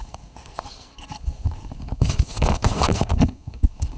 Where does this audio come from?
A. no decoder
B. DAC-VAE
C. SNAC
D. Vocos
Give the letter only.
C